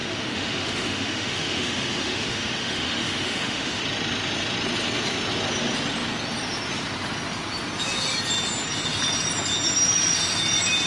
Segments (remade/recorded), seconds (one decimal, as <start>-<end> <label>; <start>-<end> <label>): 0.0-3.8 remade; 3.8-10.9 recorded